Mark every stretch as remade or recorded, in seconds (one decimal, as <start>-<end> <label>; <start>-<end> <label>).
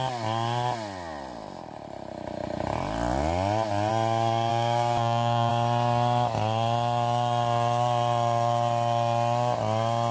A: 0.0-4.5 recorded; 4.5-5.5 remade; 5.5-10.1 recorded